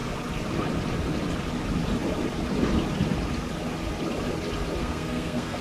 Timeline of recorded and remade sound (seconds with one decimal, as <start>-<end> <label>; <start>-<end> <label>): 0.0-4.8 recorded; 4.8-5.6 remade